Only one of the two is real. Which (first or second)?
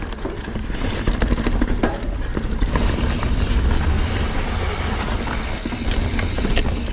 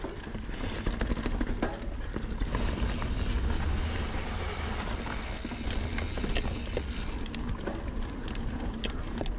second